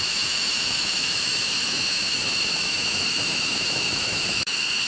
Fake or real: fake